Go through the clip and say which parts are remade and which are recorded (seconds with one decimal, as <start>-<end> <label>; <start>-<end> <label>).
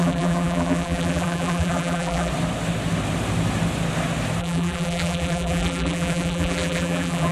0.0-2.3 remade; 2.3-4.4 recorded; 4.4-7.3 remade